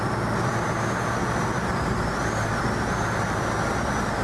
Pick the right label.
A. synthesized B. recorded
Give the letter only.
B